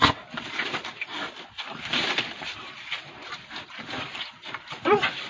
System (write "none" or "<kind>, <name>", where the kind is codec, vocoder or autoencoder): none